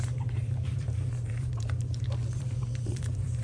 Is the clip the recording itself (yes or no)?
no